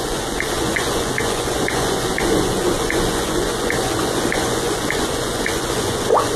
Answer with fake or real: fake